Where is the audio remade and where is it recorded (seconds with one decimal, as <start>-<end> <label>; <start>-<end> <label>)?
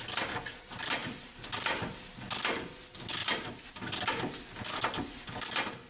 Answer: 0.0-1.0 recorded; 1.0-2.3 remade; 2.3-3.2 recorded; 3.2-4.1 remade; 4.1-5.9 recorded